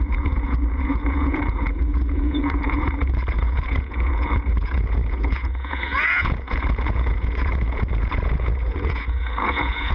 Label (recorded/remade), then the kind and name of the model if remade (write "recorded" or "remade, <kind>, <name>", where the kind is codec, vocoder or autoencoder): remade, vocoder, Vocos